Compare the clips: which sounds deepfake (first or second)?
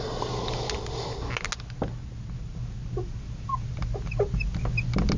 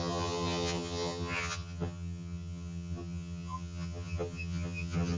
second